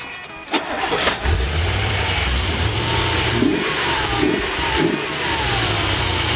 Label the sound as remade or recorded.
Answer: remade